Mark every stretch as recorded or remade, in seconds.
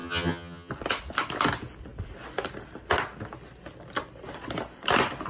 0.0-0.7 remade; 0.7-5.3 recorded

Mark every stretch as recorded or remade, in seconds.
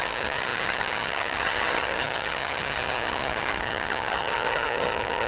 0.0-5.3 remade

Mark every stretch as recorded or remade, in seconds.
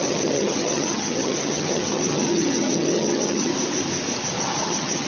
0.0-3.5 remade; 3.5-4.4 recorded; 4.4-5.1 remade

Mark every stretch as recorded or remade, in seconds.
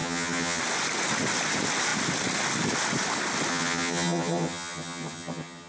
0.0-0.6 remade; 0.6-3.5 recorded; 3.5-5.7 remade